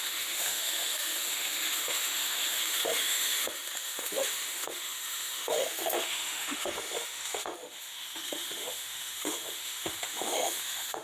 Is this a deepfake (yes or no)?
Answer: yes